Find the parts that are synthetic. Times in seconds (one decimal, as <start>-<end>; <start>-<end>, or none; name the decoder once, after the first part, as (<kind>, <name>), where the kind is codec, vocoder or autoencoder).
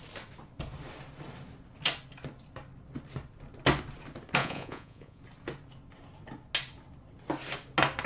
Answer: 4.4-5.2 (vocoder, Vocos)